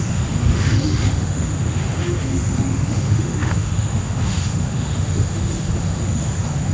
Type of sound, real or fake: fake